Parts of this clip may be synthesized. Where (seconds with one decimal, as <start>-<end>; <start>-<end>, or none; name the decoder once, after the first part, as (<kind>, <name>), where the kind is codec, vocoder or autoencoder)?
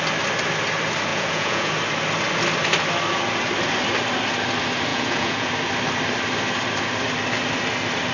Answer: 1.1-1.7 (vocoder, Vocos); 4.9-5.5